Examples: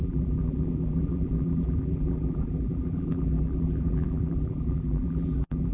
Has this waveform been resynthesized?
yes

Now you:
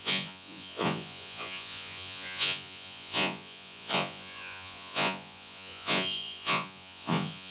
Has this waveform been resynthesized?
yes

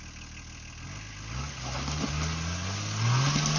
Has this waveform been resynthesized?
no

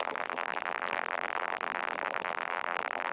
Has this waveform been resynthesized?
yes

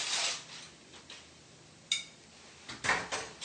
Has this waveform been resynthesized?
no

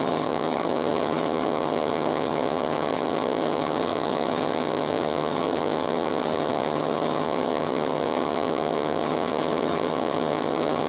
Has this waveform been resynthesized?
yes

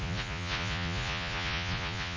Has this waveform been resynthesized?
yes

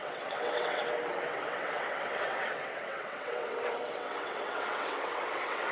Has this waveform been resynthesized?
yes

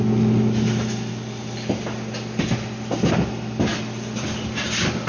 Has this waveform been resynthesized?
no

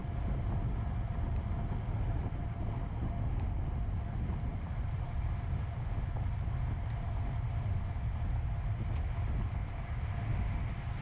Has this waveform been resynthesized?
no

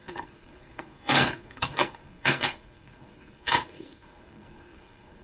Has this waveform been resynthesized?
yes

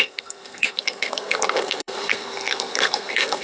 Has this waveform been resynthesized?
yes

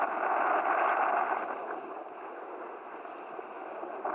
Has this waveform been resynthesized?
no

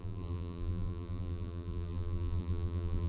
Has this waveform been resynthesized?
yes